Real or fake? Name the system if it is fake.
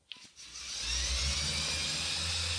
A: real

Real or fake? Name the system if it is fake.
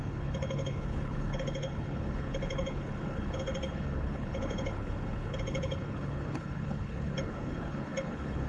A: fake, codec, HILCodec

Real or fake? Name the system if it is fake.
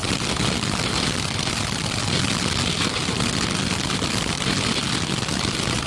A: real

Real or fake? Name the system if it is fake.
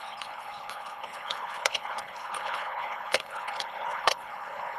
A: fake, codec, HILCodec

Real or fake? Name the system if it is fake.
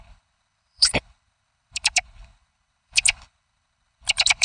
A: fake, codec, HILCodec